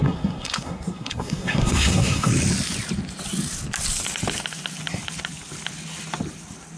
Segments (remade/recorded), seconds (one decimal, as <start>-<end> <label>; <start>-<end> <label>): 0.0-2.3 remade; 2.3-6.8 recorded